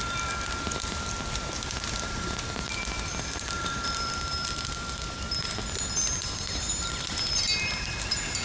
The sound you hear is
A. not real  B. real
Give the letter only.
A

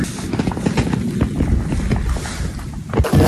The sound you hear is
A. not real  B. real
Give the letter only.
B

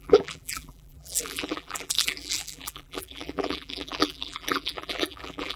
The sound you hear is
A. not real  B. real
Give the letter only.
A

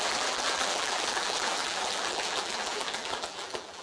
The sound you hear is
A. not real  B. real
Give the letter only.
A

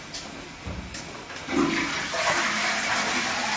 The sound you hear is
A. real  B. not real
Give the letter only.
A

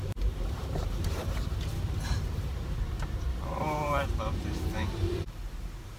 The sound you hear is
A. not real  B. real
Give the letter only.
A